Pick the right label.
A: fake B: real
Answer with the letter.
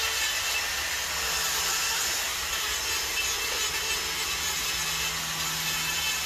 B